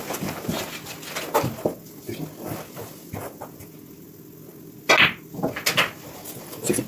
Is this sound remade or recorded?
recorded